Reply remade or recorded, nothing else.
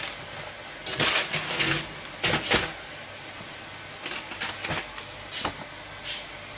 recorded